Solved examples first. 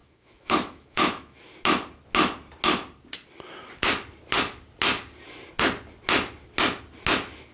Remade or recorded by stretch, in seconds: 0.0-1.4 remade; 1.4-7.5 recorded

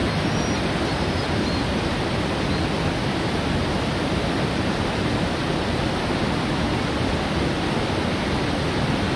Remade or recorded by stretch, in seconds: 0.0-9.2 recorded

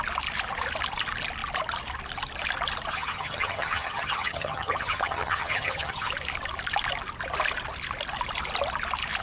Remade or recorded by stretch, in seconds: 0.0-2.9 recorded; 2.9-6.1 remade; 6.1-9.2 recorded

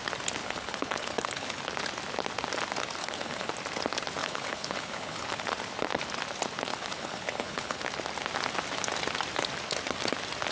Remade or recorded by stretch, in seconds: 0.0-0.4 recorded; 0.4-1.6 remade; 1.6-3.0 recorded; 3.0-3.5 remade; 3.5-4.2 recorded; 4.2-5.5 remade; 5.5-6.7 recorded; 6.7-7.8 remade; 7.8-10.5 recorded